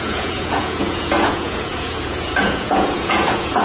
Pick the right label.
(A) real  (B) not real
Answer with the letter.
B